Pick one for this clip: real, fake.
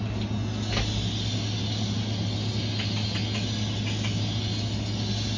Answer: real